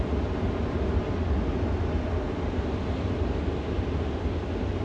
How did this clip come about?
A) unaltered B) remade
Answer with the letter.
A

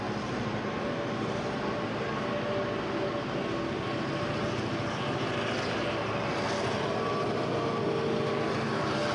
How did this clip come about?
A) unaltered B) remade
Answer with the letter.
A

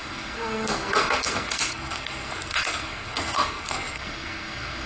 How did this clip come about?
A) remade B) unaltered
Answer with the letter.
A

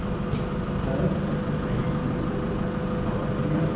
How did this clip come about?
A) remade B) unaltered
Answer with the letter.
B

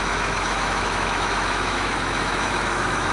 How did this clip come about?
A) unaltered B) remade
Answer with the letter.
B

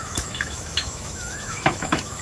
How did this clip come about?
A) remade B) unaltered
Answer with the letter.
A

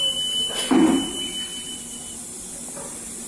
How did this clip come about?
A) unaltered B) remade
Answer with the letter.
A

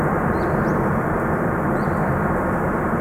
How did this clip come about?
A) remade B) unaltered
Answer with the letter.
A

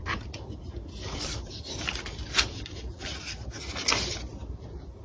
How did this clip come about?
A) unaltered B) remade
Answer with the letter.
A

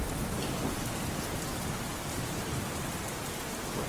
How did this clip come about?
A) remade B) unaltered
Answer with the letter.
B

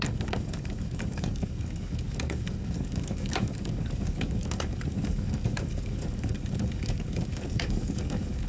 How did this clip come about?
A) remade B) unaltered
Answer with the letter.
A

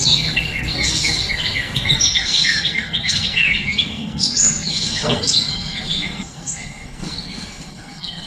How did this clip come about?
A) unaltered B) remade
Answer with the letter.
B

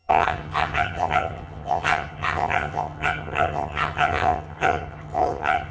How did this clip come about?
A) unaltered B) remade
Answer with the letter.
B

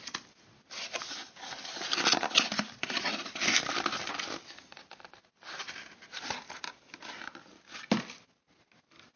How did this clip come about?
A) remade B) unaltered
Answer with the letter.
B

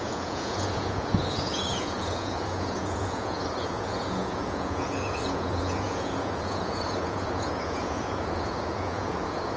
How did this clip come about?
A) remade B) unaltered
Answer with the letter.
A